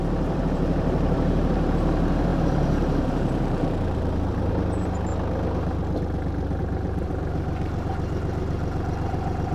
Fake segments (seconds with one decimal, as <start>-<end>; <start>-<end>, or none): 0.0-5.1; 6.6-9.5